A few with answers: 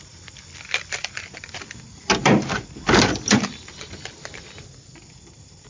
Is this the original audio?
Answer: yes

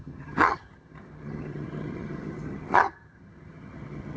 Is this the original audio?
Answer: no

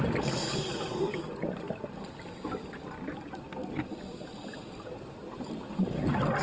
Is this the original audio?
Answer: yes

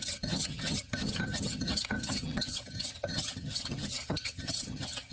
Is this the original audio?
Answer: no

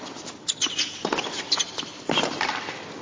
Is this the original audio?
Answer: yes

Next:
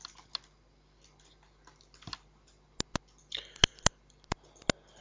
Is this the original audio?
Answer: yes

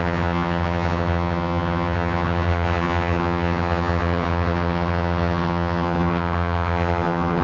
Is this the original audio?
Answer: no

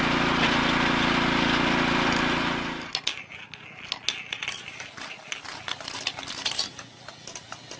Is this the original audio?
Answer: yes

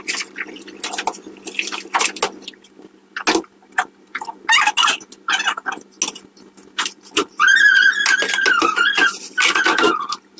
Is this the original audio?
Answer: yes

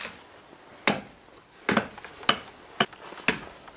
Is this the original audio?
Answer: yes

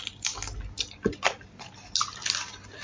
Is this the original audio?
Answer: yes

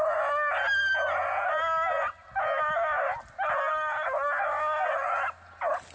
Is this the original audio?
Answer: yes